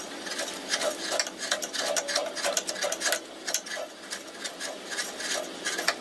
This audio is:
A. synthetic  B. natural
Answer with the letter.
B